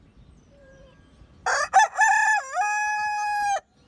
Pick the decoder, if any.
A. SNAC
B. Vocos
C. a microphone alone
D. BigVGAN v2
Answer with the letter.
C